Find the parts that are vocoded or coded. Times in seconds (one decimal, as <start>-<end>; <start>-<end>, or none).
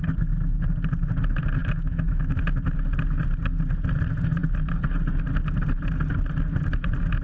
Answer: 1.6-2.4